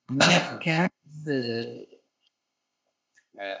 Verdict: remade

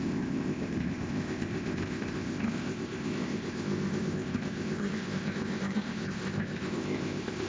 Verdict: remade